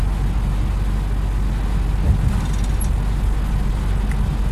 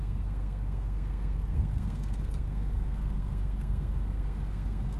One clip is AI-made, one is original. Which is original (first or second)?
first